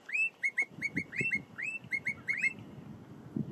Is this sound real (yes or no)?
yes